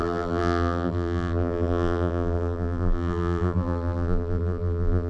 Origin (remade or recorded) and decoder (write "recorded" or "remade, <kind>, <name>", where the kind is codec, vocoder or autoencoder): remade, vocoder, BigVGAN v2